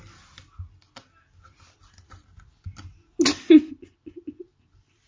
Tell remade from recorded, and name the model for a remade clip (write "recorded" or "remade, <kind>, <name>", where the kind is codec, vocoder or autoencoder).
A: recorded